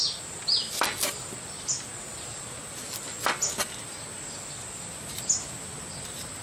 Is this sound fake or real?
real